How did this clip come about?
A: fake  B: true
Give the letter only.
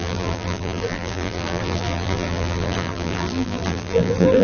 A